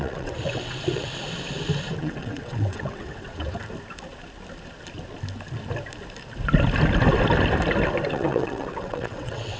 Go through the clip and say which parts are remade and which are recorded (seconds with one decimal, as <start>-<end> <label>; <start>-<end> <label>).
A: 0.0-1.1 remade; 1.1-2.0 recorded; 2.0-3.6 remade; 3.6-8.1 recorded; 8.1-9.6 remade